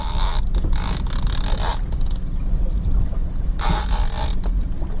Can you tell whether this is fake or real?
real